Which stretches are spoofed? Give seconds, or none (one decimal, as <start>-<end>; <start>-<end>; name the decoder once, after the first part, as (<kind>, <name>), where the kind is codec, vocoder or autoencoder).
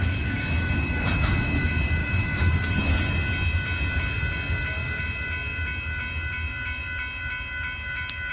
0.0-1.3 (autoencoder, DAC-VAE); 2.0-2.9